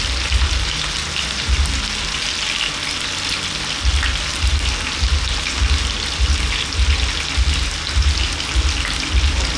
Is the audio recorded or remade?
recorded